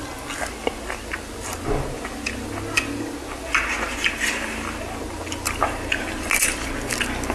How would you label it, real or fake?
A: real